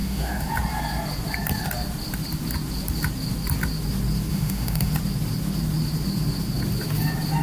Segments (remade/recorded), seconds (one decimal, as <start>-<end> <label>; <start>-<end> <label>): 0.0-0.5 remade; 0.5-4.3 recorded; 4.3-4.9 remade; 4.9-7.4 recorded